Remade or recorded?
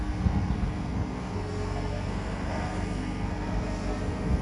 remade